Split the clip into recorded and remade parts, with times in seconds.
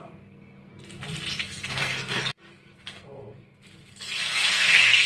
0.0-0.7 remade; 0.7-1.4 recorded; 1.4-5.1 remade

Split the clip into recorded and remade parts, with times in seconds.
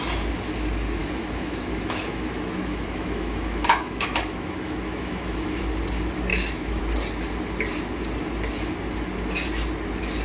0.0-1.0 recorded; 1.0-5.6 remade; 5.6-6.3 recorded; 6.3-6.8 remade; 6.8-10.2 recorded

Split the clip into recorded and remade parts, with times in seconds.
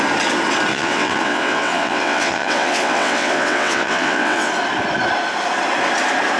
0.0-0.7 recorded; 0.7-4.5 remade; 4.5-6.4 recorded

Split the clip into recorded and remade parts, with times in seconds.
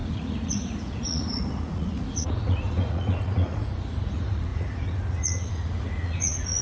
0.0-6.6 remade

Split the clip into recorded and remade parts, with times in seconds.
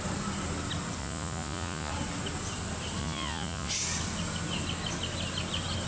0.0-1.0 recorded; 1.0-1.9 remade; 1.9-3.0 recorded; 3.0-3.7 remade; 3.7-5.9 recorded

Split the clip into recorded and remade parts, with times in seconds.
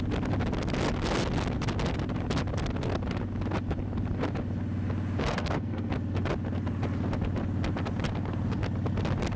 0.0-5.2 recorded; 5.2-5.9 remade; 5.9-9.4 recorded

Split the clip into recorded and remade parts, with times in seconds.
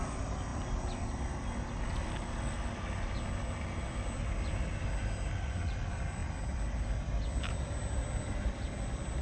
0.0-9.2 recorded